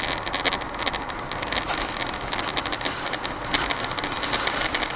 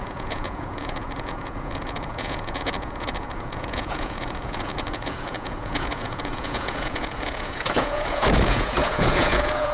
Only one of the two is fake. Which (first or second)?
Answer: second